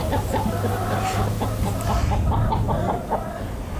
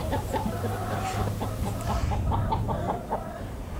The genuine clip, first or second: first